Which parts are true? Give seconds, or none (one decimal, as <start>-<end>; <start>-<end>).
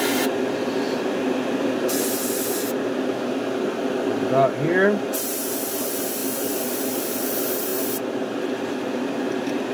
0.0-9.7